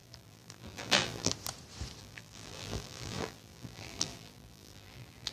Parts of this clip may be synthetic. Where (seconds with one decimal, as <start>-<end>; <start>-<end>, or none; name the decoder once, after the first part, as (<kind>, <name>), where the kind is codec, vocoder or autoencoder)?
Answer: 0.0-1.3 (vocoder, BigVGAN v2); 2.0-5.3